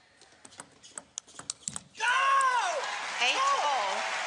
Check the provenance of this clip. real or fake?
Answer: real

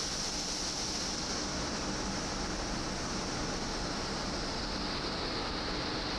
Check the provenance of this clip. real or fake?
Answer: real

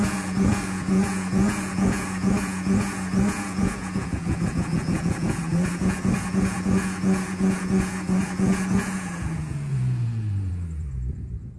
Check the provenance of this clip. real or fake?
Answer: fake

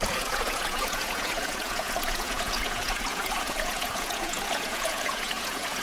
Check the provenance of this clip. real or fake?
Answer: fake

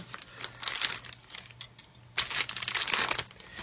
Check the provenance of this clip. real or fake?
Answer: real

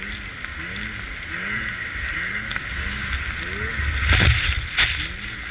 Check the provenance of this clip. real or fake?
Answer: real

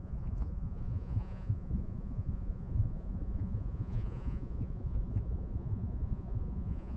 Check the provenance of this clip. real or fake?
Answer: fake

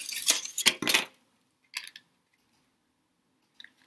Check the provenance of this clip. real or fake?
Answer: real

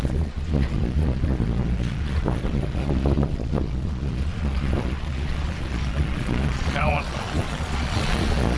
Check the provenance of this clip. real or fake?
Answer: fake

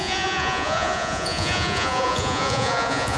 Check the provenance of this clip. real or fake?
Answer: fake